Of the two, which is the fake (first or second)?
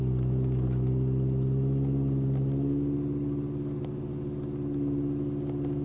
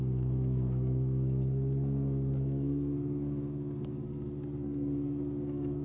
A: second